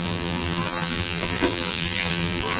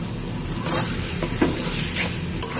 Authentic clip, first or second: second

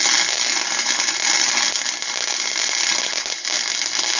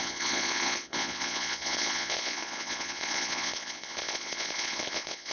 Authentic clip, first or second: first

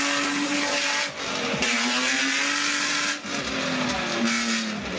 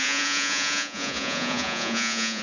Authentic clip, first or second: first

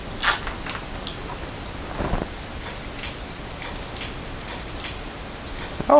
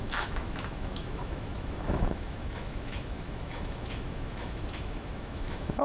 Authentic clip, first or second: first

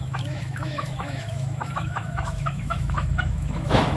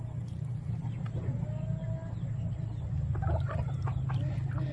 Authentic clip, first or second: second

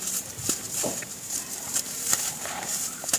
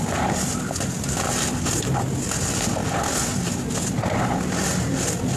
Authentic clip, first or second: second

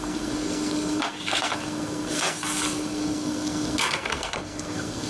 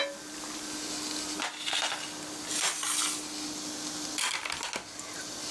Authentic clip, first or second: second